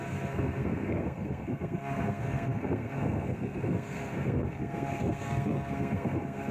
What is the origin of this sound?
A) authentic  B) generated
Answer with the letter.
B